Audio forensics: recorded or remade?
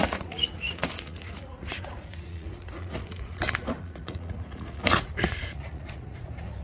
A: remade